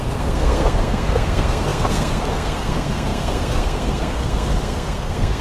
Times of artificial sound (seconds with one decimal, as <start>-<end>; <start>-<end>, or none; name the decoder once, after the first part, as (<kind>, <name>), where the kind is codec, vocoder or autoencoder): 0.0-5.4 (codec, SNAC)